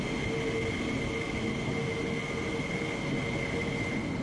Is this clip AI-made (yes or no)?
no